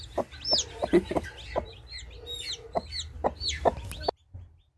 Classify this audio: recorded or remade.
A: recorded